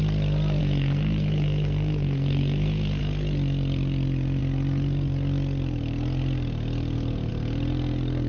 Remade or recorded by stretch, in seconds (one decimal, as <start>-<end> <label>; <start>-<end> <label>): 0.0-0.6 recorded; 0.6-3.0 remade; 3.0-8.3 recorded